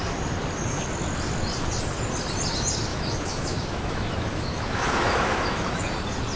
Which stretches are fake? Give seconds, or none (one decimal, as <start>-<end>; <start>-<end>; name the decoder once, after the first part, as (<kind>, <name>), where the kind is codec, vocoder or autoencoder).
2.9-5.8 (autoencoder, DAC-VAE)